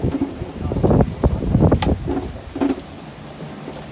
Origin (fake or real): real